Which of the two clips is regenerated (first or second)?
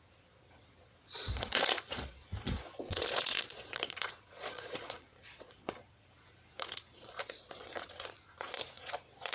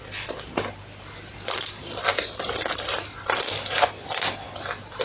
first